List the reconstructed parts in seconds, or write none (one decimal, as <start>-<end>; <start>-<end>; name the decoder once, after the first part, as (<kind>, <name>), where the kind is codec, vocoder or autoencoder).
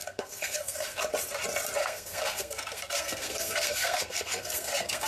0.0-1.0 (codec, SNAC); 1.8-5.1